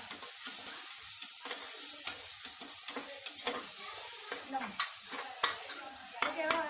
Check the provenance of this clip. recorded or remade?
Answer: recorded